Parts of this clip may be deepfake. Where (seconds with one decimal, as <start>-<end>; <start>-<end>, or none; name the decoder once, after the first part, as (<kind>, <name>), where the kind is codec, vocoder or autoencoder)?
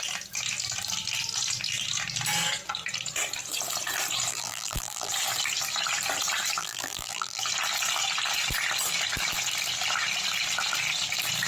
4.3-5.1 (vocoder, BigVGAN v2); 6.6-7.4